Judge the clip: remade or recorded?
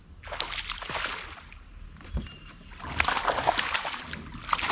recorded